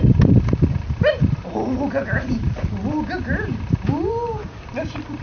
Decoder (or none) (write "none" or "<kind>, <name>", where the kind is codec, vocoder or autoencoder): none